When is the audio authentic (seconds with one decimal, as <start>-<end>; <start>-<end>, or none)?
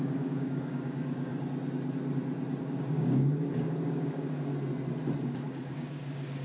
1.3-2.6; 4.5-5.2